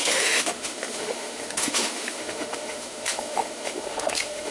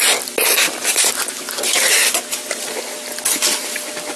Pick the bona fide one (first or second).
second